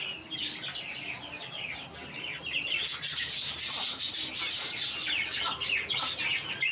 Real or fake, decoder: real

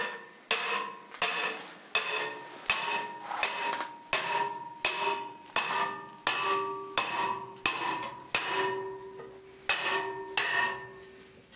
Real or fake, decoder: real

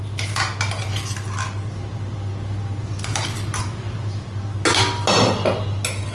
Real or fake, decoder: real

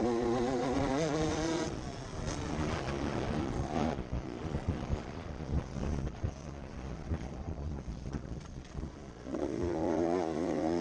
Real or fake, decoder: fake, vocoder, Vocos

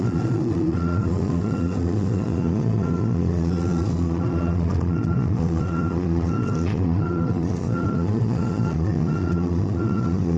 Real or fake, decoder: fake, vocoder, Vocos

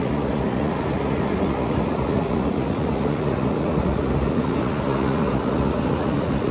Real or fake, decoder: fake, vocoder, Vocos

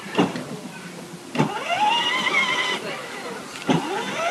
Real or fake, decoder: real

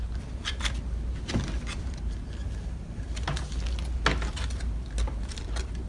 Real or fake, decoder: real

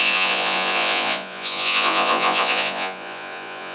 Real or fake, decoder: fake, vocoder, Vocos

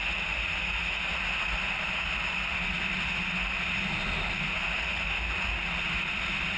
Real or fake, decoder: real